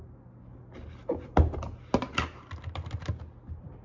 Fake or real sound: real